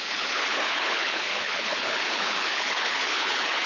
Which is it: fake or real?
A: fake